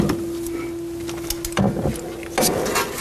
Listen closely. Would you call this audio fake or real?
real